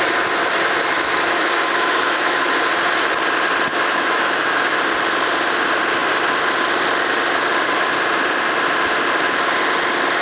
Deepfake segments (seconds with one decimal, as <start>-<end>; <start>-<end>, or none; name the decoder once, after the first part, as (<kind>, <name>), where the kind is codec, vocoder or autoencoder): 1.1-2.5 (autoencoder, DAC-VAE); 3.7-4.8